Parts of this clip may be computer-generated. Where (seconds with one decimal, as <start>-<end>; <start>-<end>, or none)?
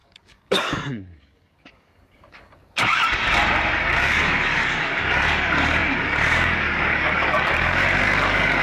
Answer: 0.0-3.2; 3.8-8.6